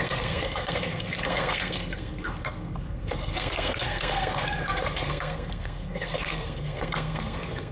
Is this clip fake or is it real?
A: fake